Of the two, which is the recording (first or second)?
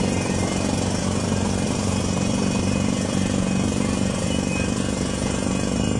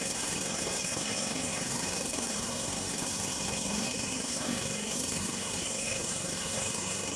first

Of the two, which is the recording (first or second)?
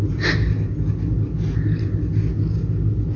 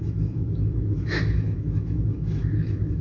first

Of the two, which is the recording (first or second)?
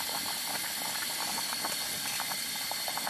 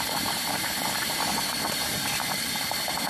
first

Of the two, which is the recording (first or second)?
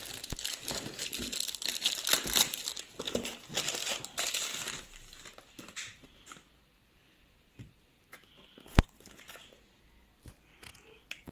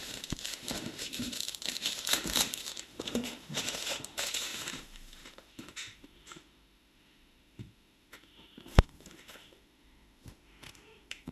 first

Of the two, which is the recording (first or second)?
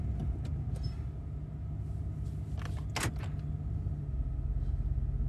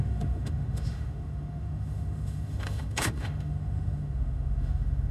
first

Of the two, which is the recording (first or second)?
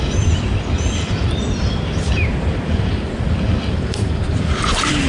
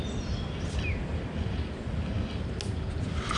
second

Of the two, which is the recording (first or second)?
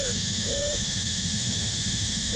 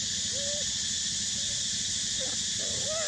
second